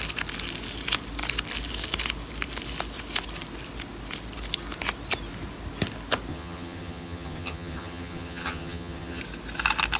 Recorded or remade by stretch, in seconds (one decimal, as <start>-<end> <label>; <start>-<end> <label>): 0.0-6.3 recorded; 6.3-9.2 remade; 9.2-10.0 recorded